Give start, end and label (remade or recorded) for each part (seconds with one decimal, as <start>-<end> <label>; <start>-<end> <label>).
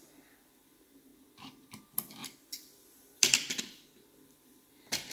0.0-1.1 remade; 1.1-1.8 recorded; 1.8-5.1 remade